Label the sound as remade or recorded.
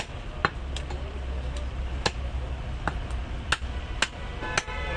recorded